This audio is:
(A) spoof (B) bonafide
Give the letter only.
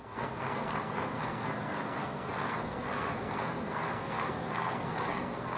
A